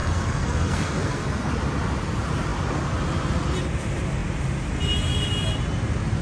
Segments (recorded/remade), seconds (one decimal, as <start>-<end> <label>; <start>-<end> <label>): 0.0-1.5 remade; 1.5-6.2 recorded

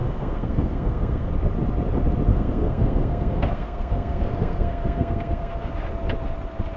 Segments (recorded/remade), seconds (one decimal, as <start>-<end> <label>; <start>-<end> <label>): 0.0-1.3 remade; 1.3-2.3 recorded; 2.3-5.7 remade; 5.7-6.8 recorded

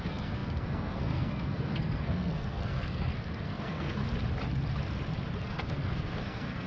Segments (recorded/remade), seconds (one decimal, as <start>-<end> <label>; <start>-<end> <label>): 0.0-4.0 remade; 4.0-5.4 recorded; 5.4-6.7 remade

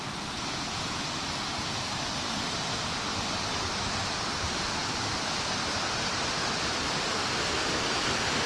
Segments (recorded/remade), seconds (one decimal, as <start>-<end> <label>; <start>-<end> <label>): 0.0-8.5 recorded

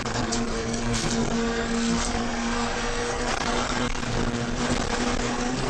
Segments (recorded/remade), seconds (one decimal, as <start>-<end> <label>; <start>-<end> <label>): 0.0-4.0 remade; 4.0-5.2 recorded; 5.2-5.7 remade

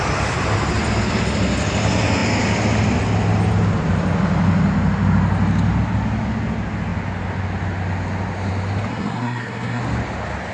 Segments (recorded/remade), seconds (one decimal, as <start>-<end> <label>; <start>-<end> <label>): 0.0-8.9 recorded; 8.9-9.8 remade; 9.8-10.5 recorded